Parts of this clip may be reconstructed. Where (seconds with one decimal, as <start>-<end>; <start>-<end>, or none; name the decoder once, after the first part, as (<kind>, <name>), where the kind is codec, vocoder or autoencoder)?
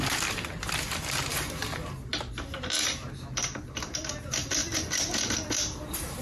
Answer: none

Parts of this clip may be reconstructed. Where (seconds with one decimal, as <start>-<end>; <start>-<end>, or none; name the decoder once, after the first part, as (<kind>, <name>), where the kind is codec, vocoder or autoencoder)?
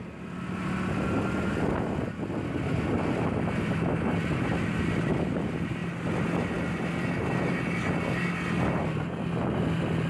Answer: none